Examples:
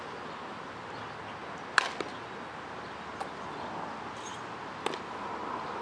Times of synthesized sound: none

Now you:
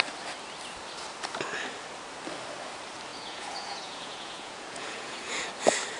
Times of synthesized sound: 3.1-5.5 (vocoder, Vocos)

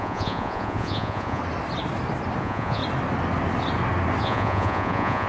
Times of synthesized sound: 0.0-1.4 (vocoder, Vocos); 2.4-2.8; 4.2-5.3

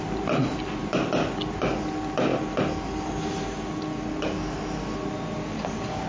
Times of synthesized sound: none

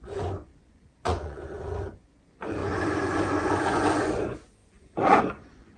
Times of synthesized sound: 0.0-5.8 (vocoder, Vocos)

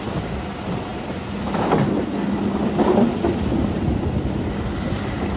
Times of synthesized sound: none

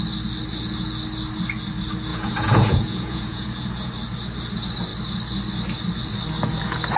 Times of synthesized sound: 2.1-3.9 (vocoder, Vocos)

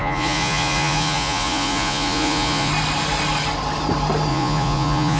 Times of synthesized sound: 0.0-2.7 (vocoder, Vocos); 4.3-5.2